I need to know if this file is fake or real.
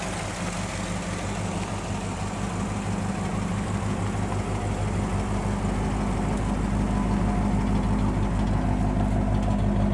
real